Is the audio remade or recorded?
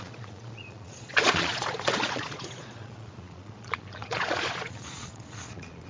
remade